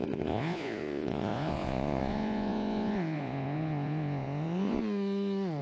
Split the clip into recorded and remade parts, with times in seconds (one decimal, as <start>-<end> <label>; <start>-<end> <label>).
0.0-4.8 remade; 4.8-5.6 recorded